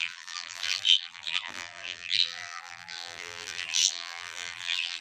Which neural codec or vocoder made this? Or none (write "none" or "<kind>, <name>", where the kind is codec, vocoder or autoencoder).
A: vocoder, BigVGAN v2